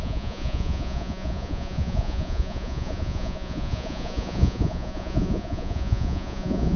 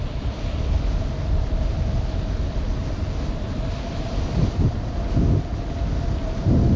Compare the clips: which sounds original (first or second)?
second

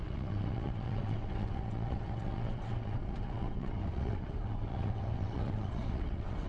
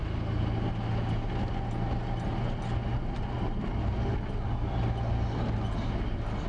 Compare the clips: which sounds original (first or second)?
second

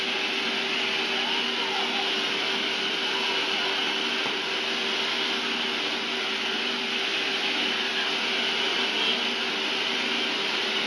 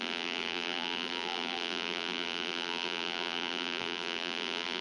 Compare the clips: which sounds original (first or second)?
first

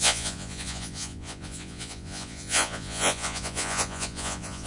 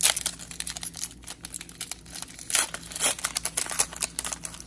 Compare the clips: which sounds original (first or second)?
second